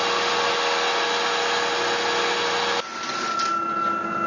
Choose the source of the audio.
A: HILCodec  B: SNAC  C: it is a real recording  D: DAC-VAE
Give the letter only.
C